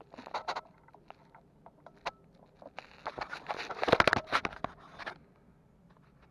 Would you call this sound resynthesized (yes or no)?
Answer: no